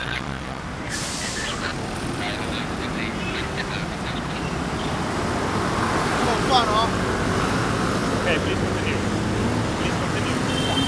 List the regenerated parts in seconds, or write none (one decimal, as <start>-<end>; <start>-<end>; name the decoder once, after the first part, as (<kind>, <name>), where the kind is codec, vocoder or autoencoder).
0.0-0.6 (vocoder, Vocos)